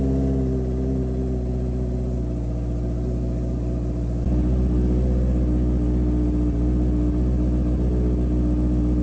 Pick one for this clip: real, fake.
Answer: real